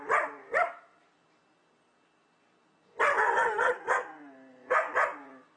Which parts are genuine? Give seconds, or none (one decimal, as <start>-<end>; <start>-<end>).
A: 0.0-5.6